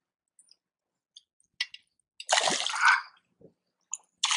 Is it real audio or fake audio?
real